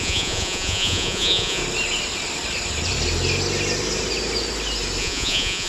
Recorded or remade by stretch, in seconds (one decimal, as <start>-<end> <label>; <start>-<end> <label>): 0.0-1.6 remade; 1.6-5.0 recorded; 5.0-5.7 remade